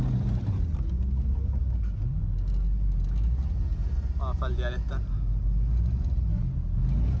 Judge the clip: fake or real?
real